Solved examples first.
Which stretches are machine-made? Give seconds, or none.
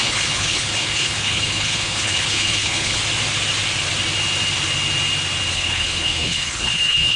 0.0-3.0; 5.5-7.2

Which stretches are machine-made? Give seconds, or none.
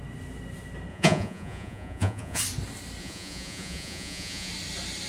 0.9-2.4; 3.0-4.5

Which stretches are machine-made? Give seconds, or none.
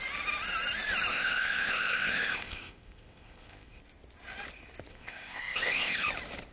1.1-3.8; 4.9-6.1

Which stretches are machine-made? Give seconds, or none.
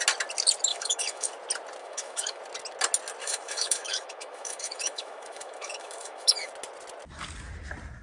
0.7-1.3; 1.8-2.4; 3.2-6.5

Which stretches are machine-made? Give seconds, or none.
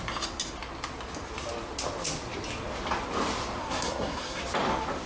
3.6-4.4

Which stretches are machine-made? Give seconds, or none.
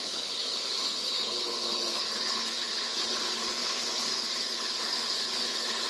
0.0-5.9